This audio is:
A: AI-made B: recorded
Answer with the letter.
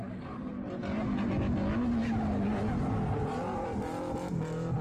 B